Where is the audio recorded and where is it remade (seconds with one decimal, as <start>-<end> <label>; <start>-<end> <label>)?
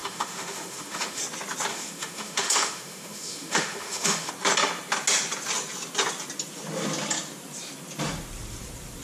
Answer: 0.0-1.2 remade; 1.2-1.7 recorded; 1.7-4.3 remade; 4.3-9.0 recorded